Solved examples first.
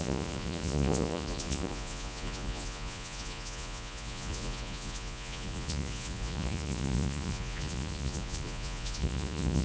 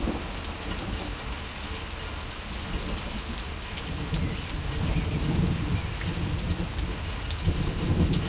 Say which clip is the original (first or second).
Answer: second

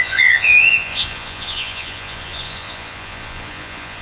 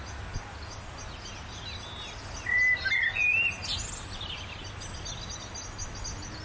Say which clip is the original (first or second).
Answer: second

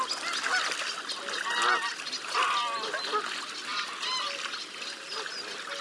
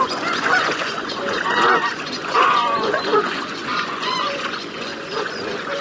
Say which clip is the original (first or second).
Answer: first